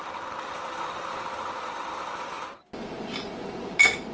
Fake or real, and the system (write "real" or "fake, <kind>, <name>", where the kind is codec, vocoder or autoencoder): real